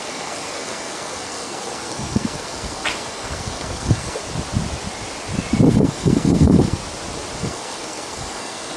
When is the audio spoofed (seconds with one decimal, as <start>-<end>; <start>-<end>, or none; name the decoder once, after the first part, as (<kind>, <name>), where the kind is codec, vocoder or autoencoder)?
0.0-4.2 (codec, SNAC); 5.7-6.8; 7.4-8.8